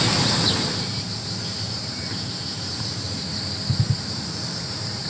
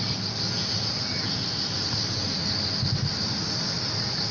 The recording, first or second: second